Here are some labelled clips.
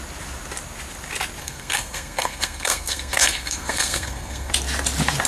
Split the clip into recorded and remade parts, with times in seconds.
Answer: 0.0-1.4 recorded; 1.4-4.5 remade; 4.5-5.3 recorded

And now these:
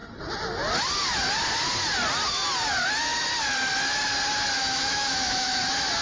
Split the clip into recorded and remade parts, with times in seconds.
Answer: 0.0-4.6 recorded; 4.6-5.6 remade; 5.6-6.0 recorded

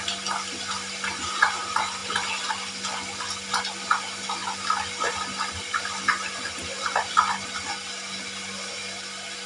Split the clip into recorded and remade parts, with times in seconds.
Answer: 0.0-9.5 recorded

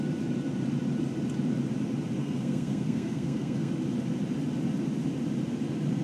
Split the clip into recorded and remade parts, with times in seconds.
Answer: 0.0-2.2 recorded; 2.2-3.7 remade; 3.7-6.0 recorded